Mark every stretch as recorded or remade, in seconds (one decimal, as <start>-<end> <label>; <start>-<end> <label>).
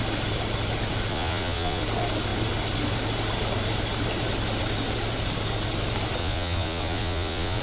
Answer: 0.0-1.1 recorded; 1.1-1.8 remade; 1.8-6.2 recorded; 6.2-7.6 remade